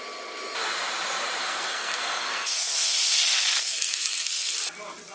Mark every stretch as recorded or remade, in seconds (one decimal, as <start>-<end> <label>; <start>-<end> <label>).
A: 0.0-1.4 recorded; 1.4-4.5 remade; 4.5-5.1 recorded